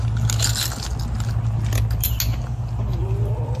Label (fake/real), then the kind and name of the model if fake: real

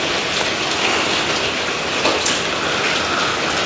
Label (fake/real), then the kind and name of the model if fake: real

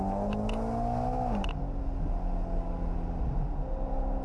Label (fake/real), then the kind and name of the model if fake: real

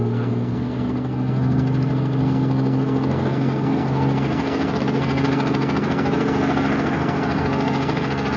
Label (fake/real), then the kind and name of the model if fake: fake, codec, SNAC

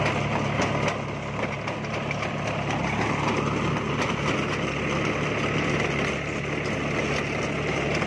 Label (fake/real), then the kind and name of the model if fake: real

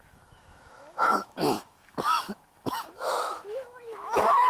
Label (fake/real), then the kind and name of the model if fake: fake, autoencoder, DAC-VAE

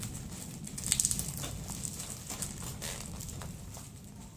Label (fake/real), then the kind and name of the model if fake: real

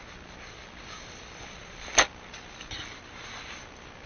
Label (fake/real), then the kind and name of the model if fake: real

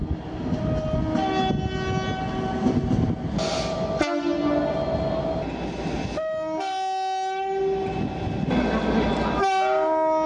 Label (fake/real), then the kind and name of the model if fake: real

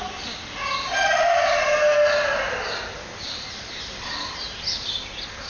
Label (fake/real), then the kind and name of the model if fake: real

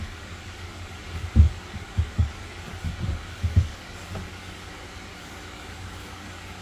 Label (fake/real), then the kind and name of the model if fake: fake, codec, DAC